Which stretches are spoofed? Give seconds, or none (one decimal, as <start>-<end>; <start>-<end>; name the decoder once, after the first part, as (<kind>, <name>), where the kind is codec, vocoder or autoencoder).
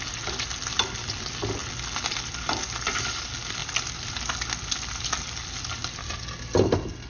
none